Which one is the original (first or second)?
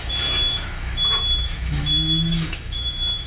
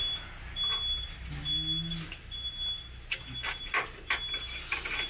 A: second